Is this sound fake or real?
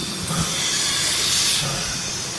real